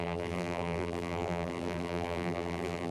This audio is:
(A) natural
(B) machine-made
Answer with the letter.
B